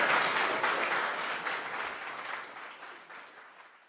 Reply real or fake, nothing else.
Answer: real